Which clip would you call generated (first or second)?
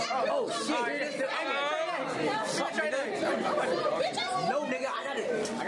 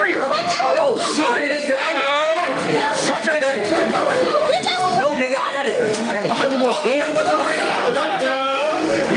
second